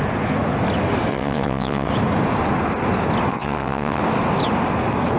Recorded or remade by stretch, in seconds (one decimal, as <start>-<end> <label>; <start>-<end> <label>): 0.0-1.1 recorded; 1.1-1.9 remade; 1.9-3.3 recorded; 3.3-4.0 remade; 4.0-5.2 recorded